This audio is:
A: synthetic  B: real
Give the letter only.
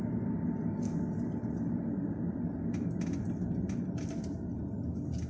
B